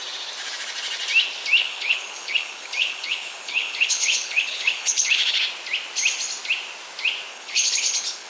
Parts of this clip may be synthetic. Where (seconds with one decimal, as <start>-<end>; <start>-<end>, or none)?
1.6-5.4; 7.3-8.3